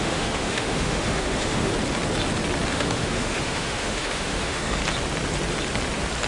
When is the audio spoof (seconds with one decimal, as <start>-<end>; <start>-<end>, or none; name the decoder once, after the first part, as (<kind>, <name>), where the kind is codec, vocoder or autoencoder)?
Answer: 0.0-1.7 (autoencoder, DAC-VAE); 2.7-4.8